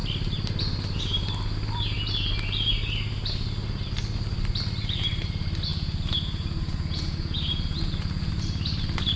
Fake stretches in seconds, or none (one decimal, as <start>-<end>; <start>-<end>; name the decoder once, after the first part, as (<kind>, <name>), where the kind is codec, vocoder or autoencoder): 5.7-8.3 (vocoder, Vocos)